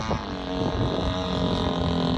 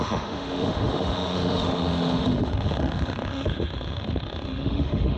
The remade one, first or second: second